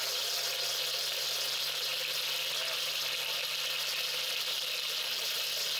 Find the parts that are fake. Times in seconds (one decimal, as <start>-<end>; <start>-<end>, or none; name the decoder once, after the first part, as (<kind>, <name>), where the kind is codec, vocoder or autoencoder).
none